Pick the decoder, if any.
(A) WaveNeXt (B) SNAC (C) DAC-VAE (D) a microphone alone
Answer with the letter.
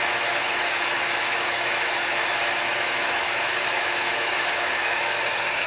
C